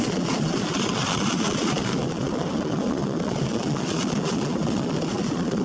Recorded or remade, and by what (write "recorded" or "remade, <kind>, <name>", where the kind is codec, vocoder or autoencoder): remade, vocoder, Vocos